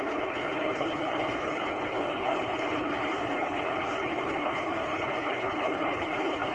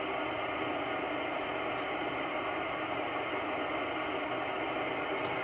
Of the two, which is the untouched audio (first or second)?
second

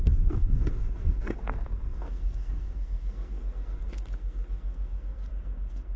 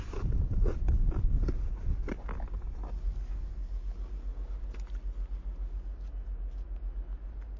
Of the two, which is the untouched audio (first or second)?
second